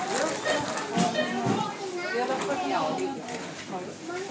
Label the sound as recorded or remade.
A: recorded